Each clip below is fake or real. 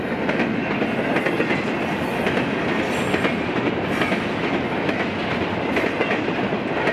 real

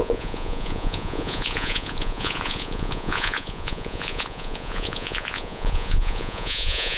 fake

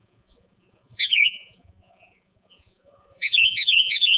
fake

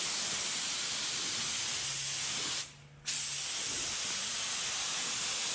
real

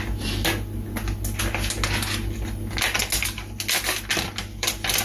real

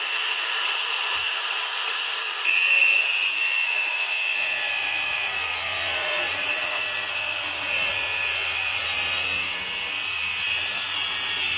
fake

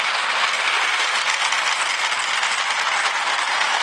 real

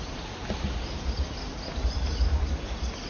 real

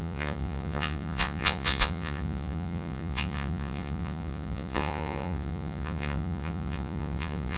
fake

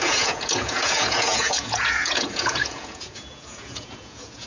fake